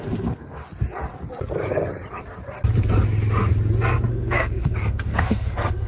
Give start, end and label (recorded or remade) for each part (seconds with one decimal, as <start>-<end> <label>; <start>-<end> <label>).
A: 0.0-0.6 remade; 0.6-4.1 recorded; 4.1-5.9 remade